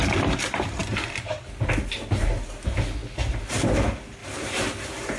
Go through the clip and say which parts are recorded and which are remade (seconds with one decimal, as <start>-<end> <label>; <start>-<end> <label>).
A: 0.0-4.2 recorded; 4.2-5.2 remade